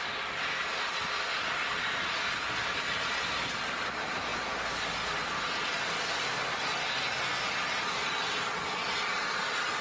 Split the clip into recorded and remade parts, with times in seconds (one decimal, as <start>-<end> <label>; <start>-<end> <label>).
0.0-9.8 recorded